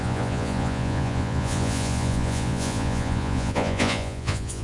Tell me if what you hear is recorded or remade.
remade